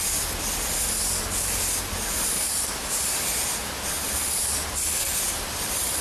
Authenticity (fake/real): fake